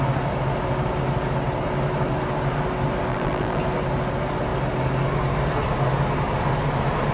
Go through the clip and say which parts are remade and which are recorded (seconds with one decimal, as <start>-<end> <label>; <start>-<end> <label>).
0.0-3.1 recorded; 3.1-3.6 remade; 3.6-7.1 recorded